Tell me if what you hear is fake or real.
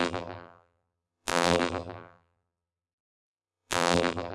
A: fake